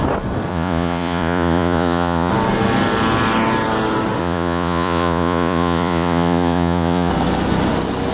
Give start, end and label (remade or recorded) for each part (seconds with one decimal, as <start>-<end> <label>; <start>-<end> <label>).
0.0-0.5 recorded; 0.5-2.3 remade; 2.3-4.2 recorded; 4.2-7.1 remade; 7.1-8.1 recorded